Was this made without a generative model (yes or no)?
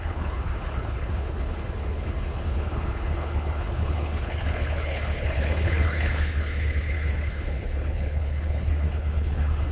no